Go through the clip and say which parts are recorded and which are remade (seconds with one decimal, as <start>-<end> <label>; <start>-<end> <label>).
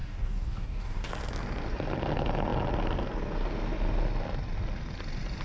0.0-1.1 remade; 1.1-5.4 recorded